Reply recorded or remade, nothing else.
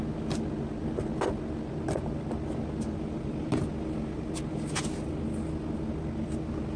recorded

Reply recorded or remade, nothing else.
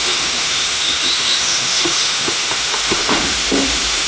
remade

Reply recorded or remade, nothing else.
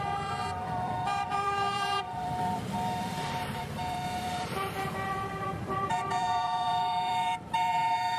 remade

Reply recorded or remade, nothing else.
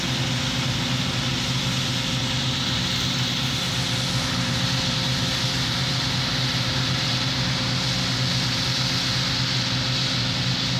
recorded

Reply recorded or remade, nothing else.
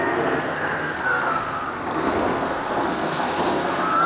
remade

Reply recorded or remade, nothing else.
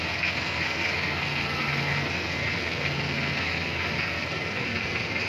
remade